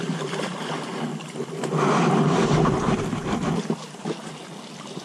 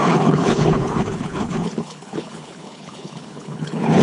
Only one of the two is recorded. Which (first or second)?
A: first